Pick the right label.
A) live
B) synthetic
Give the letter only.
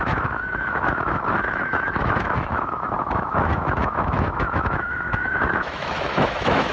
B